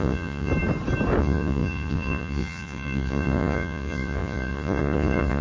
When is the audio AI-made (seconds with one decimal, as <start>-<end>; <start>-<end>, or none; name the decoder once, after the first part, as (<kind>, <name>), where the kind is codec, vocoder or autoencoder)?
0.0-0.5 (vocoder, Vocos); 1.2-5.4